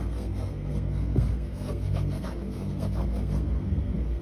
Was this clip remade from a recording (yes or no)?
yes